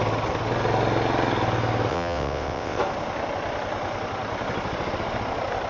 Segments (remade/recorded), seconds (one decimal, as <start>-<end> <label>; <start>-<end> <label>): 0.0-1.9 recorded; 1.9-2.8 remade; 2.8-5.7 recorded